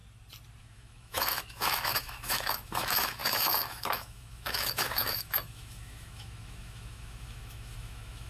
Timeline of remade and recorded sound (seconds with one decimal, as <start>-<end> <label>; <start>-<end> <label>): 0.0-0.6 recorded; 0.6-8.3 remade